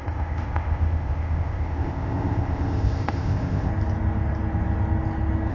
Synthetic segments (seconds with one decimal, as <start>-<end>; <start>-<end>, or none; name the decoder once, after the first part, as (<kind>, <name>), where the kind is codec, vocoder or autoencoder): 0.0-3.7 (codec, ZipCodec)